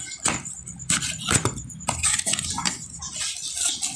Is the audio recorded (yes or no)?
yes